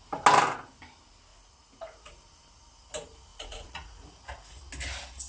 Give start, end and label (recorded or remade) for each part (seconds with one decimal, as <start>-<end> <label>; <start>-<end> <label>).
0.0-1.3 recorded; 1.3-2.1 remade; 2.1-3.3 recorded; 3.3-4.7 remade; 4.7-5.3 recorded